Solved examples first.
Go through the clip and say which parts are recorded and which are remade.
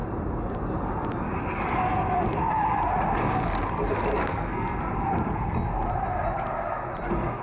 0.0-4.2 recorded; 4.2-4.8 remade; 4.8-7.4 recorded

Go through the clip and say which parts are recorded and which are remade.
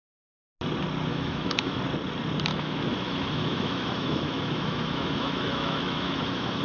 0.0-1.1 recorded; 1.1-1.8 remade; 1.8-2.5 recorded; 2.5-6.6 remade